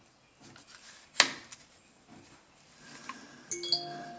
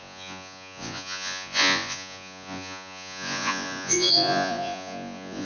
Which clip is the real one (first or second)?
first